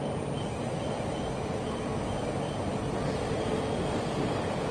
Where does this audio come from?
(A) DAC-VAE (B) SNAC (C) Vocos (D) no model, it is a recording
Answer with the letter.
D